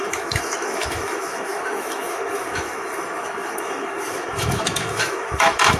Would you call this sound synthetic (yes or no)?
yes